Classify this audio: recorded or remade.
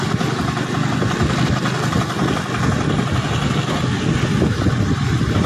recorded